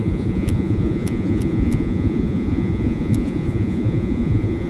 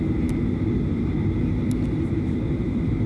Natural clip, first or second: second